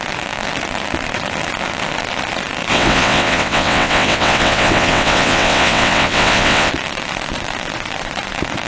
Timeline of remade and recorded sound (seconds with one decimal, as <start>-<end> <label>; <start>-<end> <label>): 0.0-2.7 recorded; 2.7-6.7 remade; 6.7-8.7 recorded